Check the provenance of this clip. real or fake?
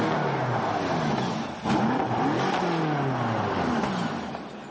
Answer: real